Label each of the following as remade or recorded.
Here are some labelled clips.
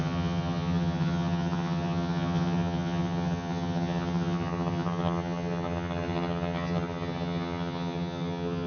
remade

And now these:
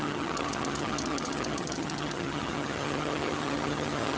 remade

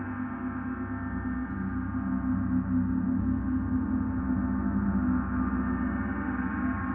recorded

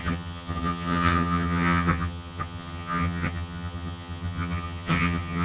remade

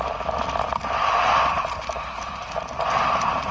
recorded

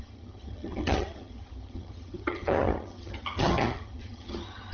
remade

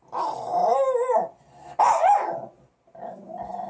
recorded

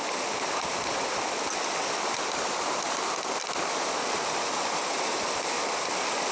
recorded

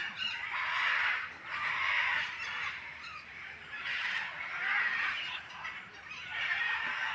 recorded